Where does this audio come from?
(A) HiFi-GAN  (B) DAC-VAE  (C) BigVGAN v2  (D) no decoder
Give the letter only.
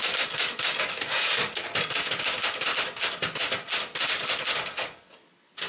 D